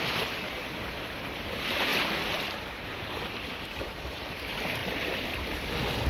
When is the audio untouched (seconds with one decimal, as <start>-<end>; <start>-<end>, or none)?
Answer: 4.8-6.1